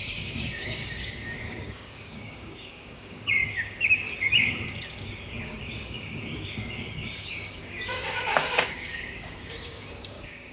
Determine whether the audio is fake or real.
fake